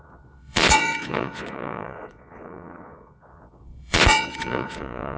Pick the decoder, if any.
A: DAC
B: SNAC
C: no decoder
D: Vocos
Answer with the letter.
D